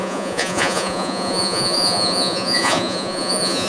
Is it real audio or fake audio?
fake